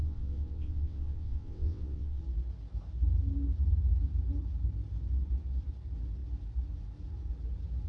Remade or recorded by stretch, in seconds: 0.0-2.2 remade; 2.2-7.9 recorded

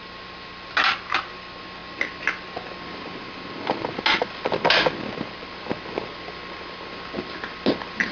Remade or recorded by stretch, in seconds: 0.0-8.1 recorded

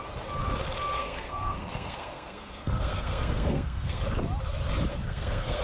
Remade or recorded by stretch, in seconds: 0.0-1.0 recorded; 1.0-4.0 remade; 4.0-4.9 recorded; 4.9-5.6 remade

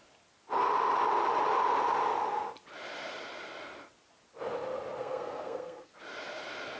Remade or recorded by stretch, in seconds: 0.0-5.0 recorded; 5.0-5.9 remade; 5.9-6.8 recorded